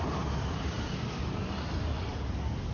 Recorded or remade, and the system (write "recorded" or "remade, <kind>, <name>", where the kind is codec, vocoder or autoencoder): recorded